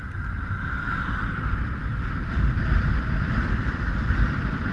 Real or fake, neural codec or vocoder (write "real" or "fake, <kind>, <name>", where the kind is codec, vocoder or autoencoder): fake, vocoder, BigVGAN v2